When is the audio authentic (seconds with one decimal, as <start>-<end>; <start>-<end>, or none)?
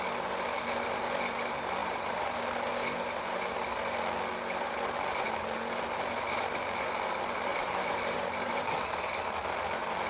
0.0-1.8; 2.4-7.5; 8.8-10.1